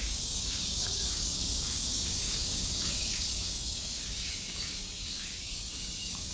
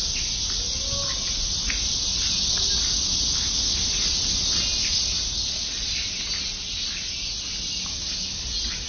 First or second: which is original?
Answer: second